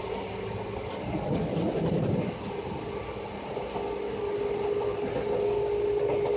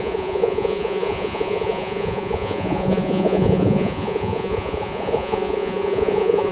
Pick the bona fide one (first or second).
first